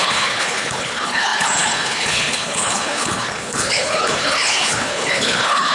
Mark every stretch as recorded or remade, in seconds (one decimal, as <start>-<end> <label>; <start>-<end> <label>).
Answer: 0.0-5.7 remade